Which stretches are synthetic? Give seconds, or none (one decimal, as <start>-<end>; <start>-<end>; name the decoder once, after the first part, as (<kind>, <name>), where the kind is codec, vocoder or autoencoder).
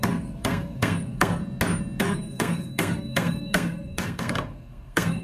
0.0-1.4 (codec, SNAC); 2.0-5.2